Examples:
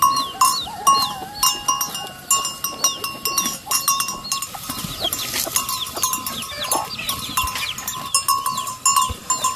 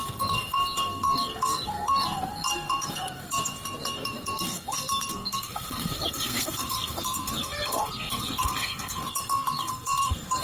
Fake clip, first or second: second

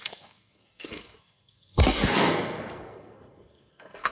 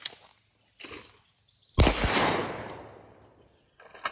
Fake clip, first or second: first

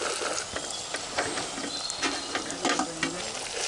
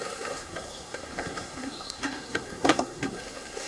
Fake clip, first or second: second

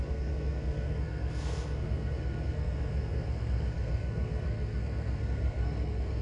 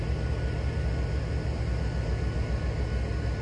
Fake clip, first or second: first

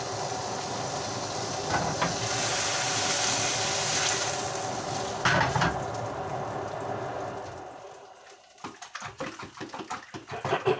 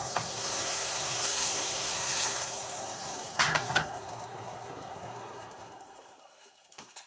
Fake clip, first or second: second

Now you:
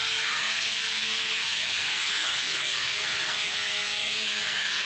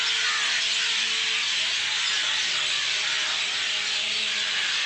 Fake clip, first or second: first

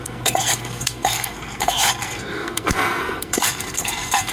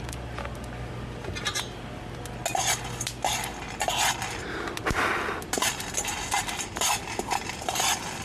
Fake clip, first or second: first